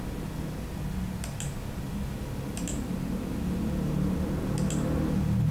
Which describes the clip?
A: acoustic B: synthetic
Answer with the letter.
A